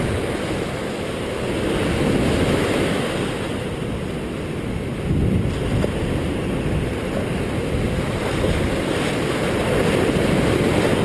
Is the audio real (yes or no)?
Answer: yes